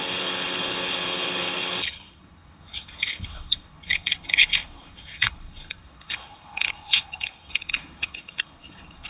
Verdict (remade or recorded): remade